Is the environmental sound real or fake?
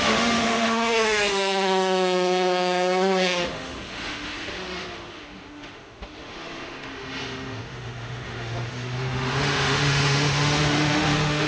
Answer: fake